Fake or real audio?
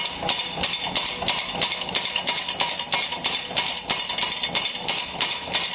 real